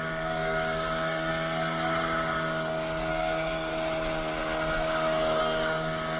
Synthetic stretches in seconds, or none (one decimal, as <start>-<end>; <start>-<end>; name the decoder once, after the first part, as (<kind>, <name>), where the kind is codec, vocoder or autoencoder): 0.0-1.3 (codec, DAC); 3.1-3.7; 5.4-6.2